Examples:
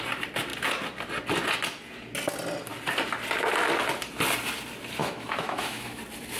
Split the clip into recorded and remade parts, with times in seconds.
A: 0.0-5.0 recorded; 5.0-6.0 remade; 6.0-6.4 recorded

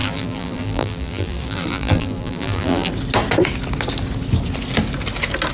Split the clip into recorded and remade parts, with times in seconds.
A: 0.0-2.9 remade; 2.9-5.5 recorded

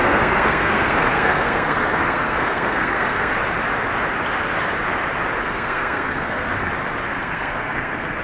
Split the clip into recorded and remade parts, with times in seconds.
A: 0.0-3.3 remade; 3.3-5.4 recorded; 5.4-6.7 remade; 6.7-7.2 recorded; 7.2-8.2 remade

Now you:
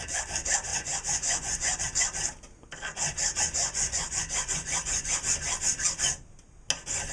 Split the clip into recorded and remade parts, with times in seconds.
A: 0.0-0.7 recorded; 0.7-1.8 remade; 1.8-3.6 recorded; 3.6-5.2 remade; 5.2-7.1 recorded